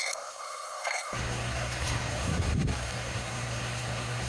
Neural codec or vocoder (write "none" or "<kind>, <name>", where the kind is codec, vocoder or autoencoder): codec, SNAC